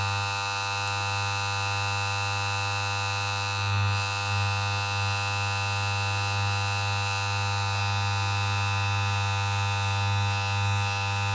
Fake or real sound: real